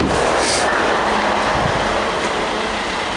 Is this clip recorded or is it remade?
recorded